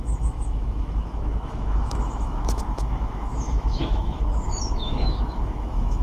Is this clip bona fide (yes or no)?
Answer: no